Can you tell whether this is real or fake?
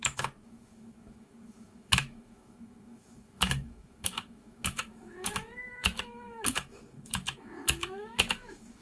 fake